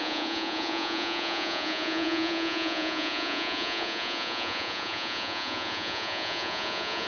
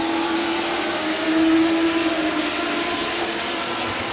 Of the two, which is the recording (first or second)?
second